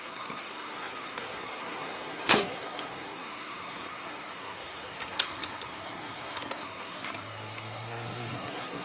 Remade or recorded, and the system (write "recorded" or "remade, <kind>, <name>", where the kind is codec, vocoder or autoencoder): remade, codec, SNAC